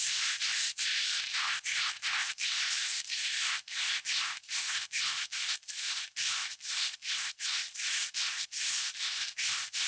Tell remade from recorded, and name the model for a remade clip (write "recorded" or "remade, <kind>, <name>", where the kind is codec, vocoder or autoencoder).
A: remade, codec, ZipCodec